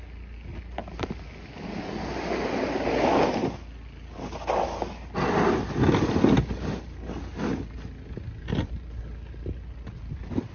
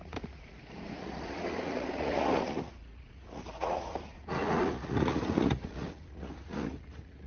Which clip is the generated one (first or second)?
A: second